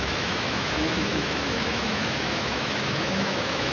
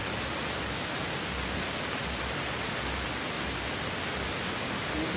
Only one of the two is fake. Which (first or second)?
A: first